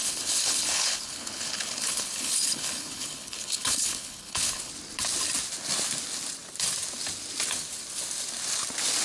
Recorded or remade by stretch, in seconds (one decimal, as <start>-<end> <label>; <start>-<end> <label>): 0.0-4.7 remade; 4.7-9.0 recorded